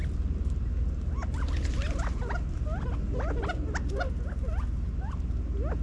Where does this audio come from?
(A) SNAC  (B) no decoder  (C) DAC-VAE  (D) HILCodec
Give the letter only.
B